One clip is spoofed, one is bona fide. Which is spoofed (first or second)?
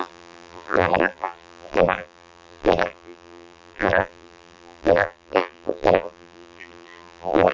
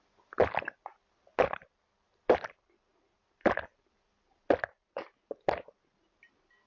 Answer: first